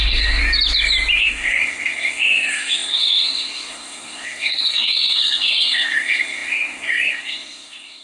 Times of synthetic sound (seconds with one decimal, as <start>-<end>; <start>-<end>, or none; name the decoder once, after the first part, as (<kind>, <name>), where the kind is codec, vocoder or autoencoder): 0.0-0.4 (codec, SNAC); 1.2-8.0